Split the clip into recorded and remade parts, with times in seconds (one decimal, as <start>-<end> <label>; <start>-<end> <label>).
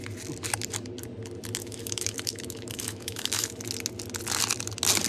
0.0-1.6 recorded; 1.6-3.6 remade; 3.6-5.1 recorded